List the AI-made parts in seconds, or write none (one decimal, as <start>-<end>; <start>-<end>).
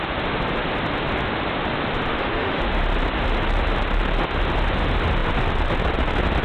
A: 2.1-2.6